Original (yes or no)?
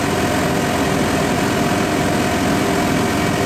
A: yes